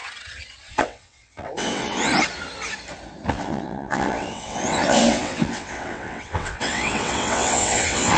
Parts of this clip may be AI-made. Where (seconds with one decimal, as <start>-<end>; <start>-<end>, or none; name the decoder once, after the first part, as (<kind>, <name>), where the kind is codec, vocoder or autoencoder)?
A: 0.7-2.1 (vocoder, WaveNeXt); 3.3-8.2